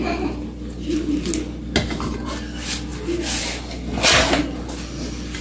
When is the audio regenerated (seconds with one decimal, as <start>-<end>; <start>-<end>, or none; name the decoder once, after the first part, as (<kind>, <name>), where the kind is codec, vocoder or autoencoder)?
none